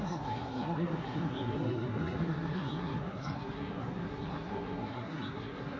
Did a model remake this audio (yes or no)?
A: yes